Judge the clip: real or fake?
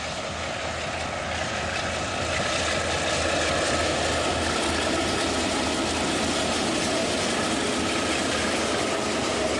real